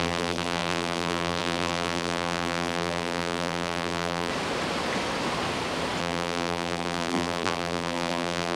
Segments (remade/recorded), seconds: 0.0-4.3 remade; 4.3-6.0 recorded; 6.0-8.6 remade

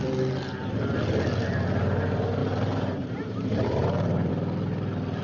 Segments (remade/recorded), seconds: 0.0-2.4 recorded; 2.4-4.3 remade; 4.3-5.2 recorded

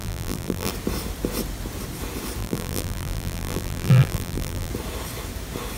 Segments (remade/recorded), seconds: 0.0-0.7 remade; 0.7-2.4 recorded; 2.4-4.7 remade; 4.7-5.8 recorded

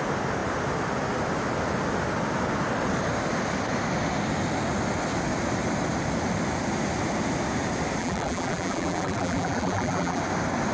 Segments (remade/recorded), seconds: 0.0-8.0 recorded; 8.0-10.2 remade; 10.2-10.7 recorded

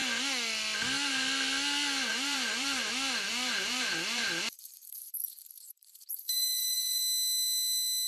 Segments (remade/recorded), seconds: 0.0-2.1 recorded; 2.1-2.9 remade; 2.9-3.3 recorded; 3.3-7.0 remade; 7.0-8.1 recorded